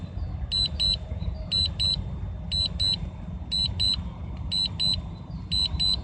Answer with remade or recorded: recorded